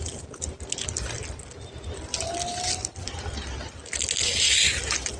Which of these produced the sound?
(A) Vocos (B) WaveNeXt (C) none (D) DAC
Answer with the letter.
C